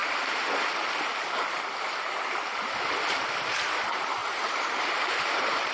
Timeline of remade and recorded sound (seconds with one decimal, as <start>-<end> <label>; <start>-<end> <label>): 0.0-3.4 recorded; 3.4-5.7 remade